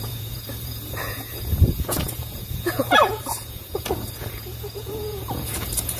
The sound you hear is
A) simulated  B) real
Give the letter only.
A